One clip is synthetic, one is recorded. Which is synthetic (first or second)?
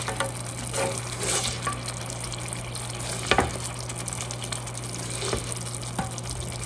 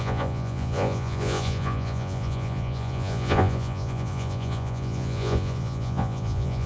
second